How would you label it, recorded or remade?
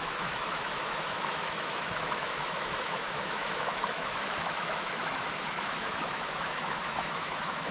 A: remade